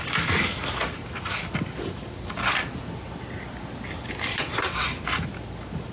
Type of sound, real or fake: real